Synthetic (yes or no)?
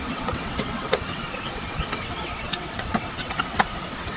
yes